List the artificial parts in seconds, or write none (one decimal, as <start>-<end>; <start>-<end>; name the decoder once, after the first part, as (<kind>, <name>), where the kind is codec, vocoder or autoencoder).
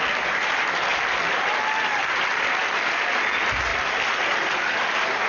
none